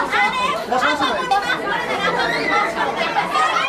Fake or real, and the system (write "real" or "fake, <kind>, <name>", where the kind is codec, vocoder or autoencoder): fake, vocoder, BigVGAN v2